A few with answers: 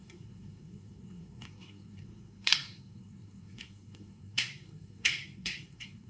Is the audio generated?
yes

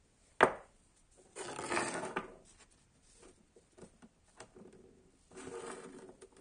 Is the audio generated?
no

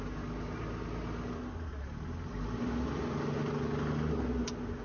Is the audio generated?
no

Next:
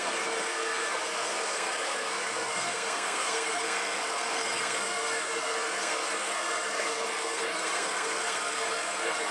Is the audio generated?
yes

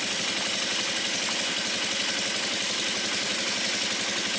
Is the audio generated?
no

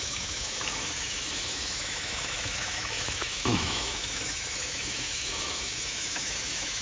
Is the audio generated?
yes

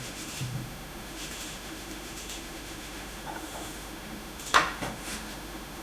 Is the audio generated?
yes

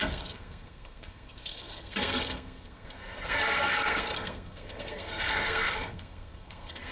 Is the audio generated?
yes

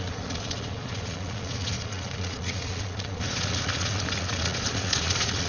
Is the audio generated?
yes